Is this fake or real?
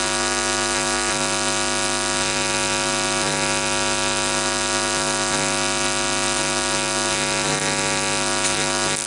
real